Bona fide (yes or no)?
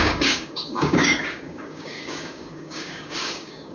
no